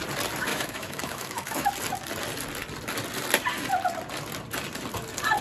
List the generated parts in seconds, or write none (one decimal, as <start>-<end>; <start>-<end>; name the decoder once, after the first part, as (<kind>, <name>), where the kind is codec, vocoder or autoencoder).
0.5-1.7 (autoencoder, DAC-VAE)